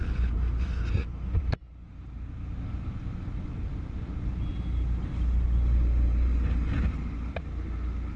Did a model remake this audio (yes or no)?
no